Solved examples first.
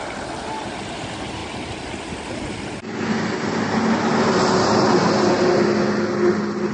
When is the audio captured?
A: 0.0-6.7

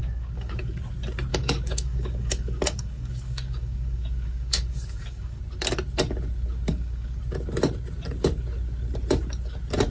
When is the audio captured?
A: 0.8-1.3; 5.4-6.7; 7.2-9.9

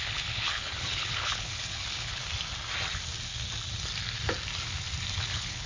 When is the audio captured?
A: 2.2-5.2

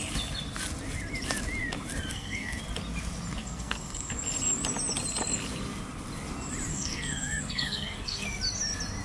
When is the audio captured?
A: 0.0-2.1; 2.6-3.4; 4.1-6.7; 8.4-9.0

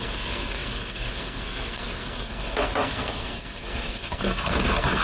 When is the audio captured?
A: none

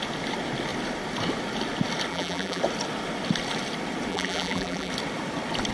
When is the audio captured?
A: 0.0-2.1; 2.6-4.1; 4.9-5.7

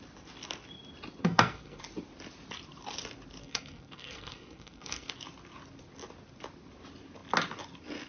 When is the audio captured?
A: 0.0-1.2; 1.8-3.4; 5.1-8.1

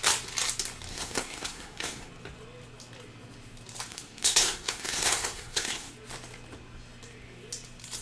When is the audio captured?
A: 0.0-0.9; 2.1-3.9; 5.9-8.0